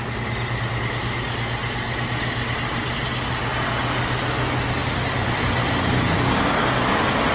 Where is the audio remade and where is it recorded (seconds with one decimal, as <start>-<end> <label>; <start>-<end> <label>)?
0.0-7.3 recorded